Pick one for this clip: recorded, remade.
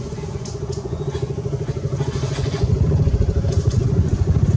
remade